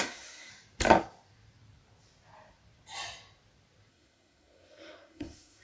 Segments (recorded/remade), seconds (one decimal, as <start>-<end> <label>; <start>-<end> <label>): 0.0-0.5 remade; 0.5-3.9 recorded; 3.9-5.6 remade